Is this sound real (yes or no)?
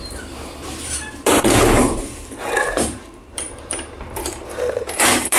no